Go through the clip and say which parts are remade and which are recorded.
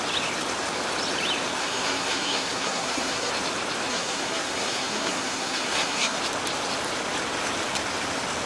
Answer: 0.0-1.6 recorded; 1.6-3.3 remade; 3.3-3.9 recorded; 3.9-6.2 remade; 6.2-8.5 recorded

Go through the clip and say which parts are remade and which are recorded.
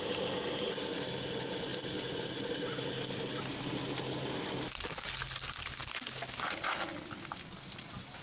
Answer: 0.0-8.2 recorded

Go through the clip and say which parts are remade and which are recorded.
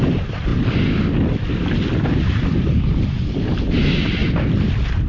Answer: 0.0-0.5 recorded; 0.5-3.1 remade; 3.1-5.1 recorded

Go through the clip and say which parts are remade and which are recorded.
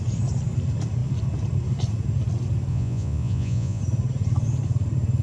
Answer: 0.0-2.7 recorded; 2.7-3.8 remade; 3.8-5.2 recorded